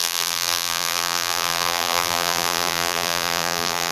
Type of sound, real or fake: fake